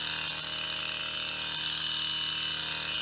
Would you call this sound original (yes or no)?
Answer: yes